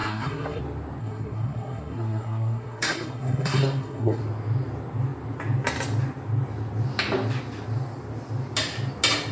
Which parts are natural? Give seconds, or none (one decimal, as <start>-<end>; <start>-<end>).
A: 0.6-1.0; 4.2-9.3

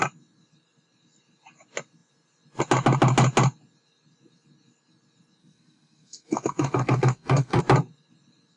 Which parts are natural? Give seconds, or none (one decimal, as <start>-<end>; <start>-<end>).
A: 0.0-5.4; 7.6-8.6

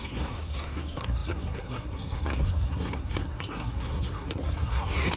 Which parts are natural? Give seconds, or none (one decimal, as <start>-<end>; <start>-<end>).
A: none

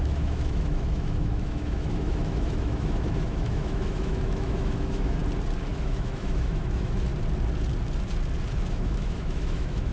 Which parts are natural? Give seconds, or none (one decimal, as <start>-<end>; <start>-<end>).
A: 5.2-5.7; 7.1-8.7